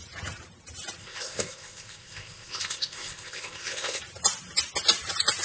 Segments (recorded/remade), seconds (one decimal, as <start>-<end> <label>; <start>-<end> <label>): 0.0-1.0 recorded; 1.0-4.0 remade; 4.0-5.4 recorded